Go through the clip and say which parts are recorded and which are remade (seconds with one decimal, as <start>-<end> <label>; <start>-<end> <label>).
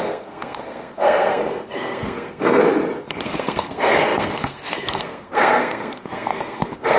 0.0-2.6 remade; 2.6-3.1 recorded; 3.1-7.0 remade